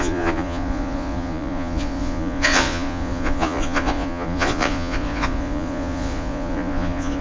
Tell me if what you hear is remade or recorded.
remade